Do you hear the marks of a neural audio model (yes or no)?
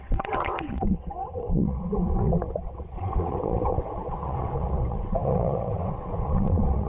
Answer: yes